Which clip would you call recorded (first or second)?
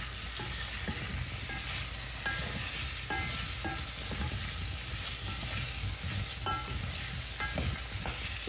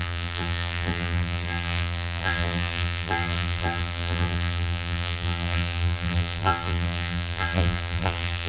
first